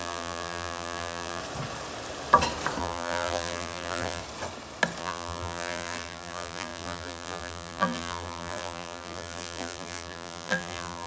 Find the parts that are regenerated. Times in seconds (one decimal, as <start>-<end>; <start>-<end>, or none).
0.0-1.4; 2.8-4.2; 5.0-11.1